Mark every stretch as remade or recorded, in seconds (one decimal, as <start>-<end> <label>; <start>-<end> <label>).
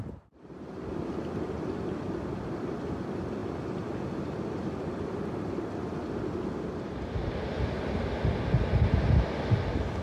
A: 0.0-10.0 recorded